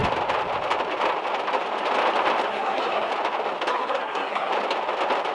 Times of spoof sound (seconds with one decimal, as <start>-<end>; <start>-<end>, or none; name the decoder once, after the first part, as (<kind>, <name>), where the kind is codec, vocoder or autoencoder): 2.5-3.1 (codec, SNAC); 3.7-4.5